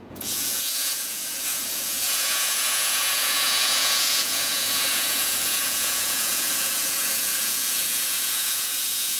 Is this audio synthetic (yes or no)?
yes